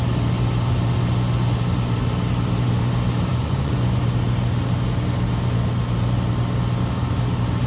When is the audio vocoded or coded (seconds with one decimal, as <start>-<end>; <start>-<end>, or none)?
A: 3.3-4.0